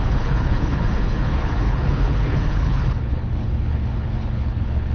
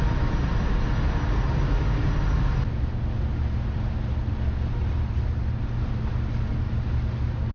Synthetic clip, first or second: first